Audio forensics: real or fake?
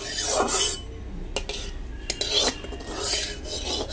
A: real